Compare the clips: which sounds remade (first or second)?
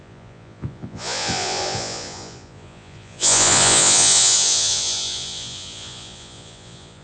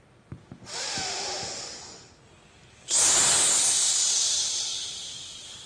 first